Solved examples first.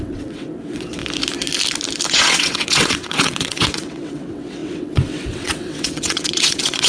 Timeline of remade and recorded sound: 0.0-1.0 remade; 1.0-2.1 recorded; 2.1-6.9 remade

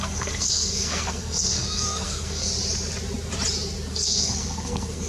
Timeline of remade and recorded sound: 0.0-2.5 remade; 2.5-3.9 recorded; 3.9-5.1 remade